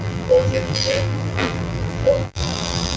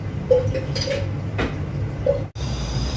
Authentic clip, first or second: second